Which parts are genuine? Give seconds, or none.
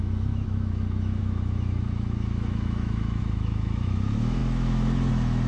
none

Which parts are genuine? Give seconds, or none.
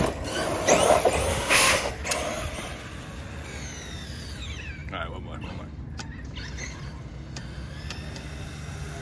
0.0-1.3; 1.9-9.0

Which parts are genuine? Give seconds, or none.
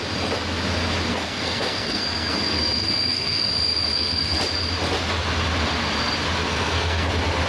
0.0-1.1; 3.5-3.9; 4.4-6.5; 7.1-7.5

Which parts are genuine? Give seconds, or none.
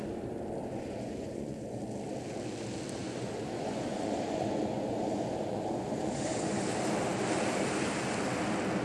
0.0-0.6; 1.8-3.0; 6.5-8.8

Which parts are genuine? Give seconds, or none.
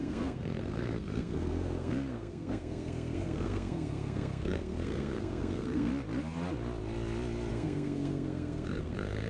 5.9-7.5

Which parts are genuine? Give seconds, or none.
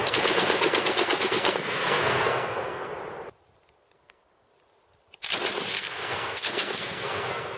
2.9-3.8; 4.5-5.7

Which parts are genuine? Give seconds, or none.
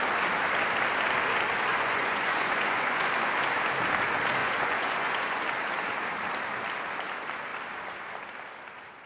0.0-1.7; 3.1-4.4; 5.4-9.1